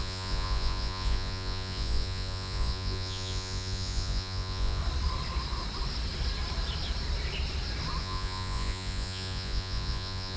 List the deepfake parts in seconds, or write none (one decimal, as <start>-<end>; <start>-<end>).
0.0-4.8; 8.0-10.4